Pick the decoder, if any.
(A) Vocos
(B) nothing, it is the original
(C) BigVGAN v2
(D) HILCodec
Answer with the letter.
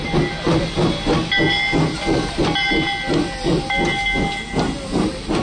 B